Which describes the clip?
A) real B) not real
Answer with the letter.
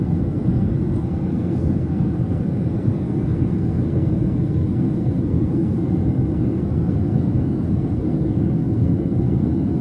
B